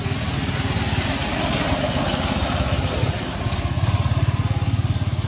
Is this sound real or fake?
real